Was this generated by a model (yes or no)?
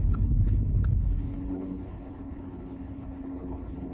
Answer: yes